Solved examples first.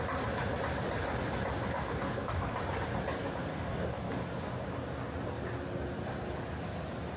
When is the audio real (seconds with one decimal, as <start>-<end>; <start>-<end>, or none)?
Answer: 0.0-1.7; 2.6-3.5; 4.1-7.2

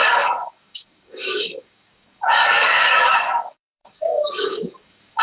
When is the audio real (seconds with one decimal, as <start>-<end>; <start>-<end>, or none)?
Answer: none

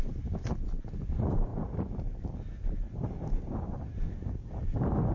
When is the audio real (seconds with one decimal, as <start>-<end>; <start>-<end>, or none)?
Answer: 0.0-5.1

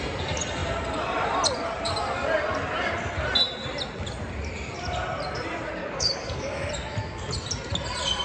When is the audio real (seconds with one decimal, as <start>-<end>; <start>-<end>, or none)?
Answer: 0.0-5.8; 6.7-8.2